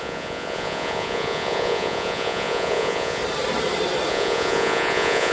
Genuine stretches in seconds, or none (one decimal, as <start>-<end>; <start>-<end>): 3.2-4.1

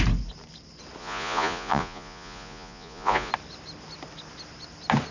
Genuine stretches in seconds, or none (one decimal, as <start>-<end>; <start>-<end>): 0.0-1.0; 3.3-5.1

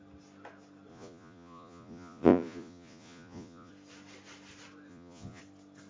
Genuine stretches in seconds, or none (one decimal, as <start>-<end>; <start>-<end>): 0.0-0.9; 3.7-4.9; 5.4-5.9

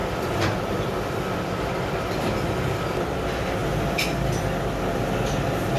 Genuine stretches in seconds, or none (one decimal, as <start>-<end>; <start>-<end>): 2.8-3.6; 4.6-5.8

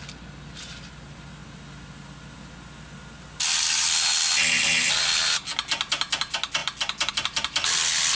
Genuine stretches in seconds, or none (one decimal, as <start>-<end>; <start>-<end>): 0.0-8.1

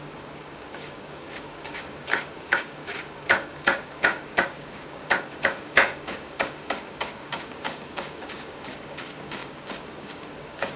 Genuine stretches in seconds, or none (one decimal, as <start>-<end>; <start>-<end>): none